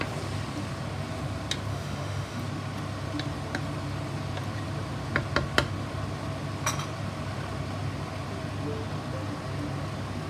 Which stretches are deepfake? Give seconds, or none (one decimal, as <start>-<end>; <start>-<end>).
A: 1.7-2.4